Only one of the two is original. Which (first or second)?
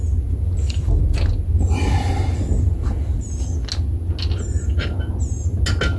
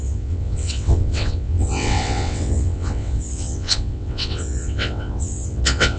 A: first